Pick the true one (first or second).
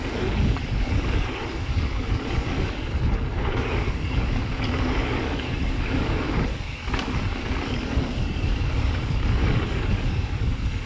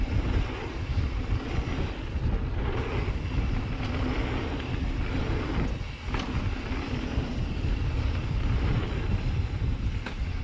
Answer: second